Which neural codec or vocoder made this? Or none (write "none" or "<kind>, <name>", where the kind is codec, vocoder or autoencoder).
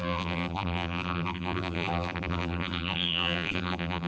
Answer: vocoder, BigVGAN v2